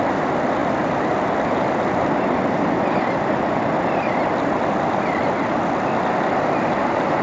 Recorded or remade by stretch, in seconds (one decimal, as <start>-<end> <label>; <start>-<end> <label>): 0.0-0.6 recorded; 0.6-3.3 remade; 3.3-7.2 recorded